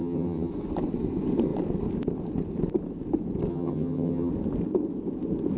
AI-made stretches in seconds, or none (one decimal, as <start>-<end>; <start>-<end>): 0.0-0.5; 3.5-4.3